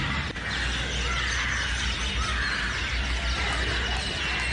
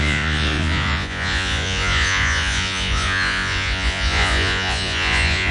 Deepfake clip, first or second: second